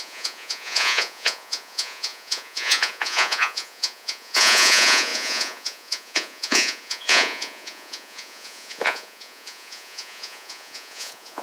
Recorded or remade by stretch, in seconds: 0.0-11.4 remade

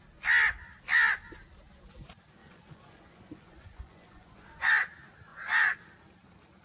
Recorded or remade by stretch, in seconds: 0.0-2.4 recorded; 2.4-4.7 remade; 4.7-5.3 recorded; 5.3-5.8 remade; 5.8-6.6 recorded

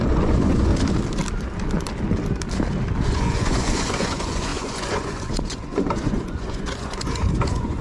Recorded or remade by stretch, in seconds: 0.0-0.7 remade; 0.7-3.0 recorded; 3.0-7.8 remade

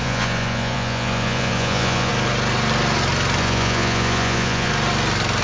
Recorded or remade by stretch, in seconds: 0.0-2.1 remade; 2.1-3.4 recorded; 3.4-4.7 remade; 4.7-5.4 recorded

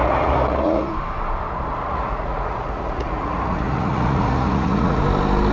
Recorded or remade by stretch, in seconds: 0.0-0.9 remade; 0.9-1.7 recorded; 1.7-5.0 remade; 5.0-5.5 recorded

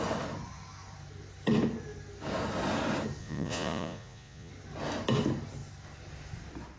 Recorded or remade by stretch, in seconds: 0.0-3.2 recorded; 3.2-4.5 remade; 4.5-6.8 recorded

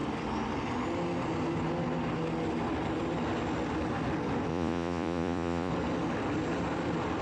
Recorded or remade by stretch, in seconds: 0.0-4.5 recorded; 4.5-5.7 remade; 5.7-7.2 recorded

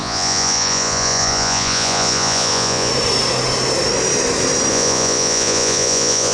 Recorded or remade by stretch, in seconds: 0.0-2.9 remade; 2.9-4.7 recorded; 4.7-6.3 remade